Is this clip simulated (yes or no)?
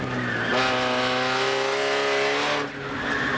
no